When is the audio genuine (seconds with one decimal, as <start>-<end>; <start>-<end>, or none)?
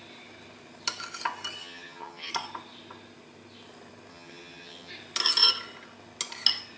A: 0.0-1.6; 2.3-4.1; 4.9-6.8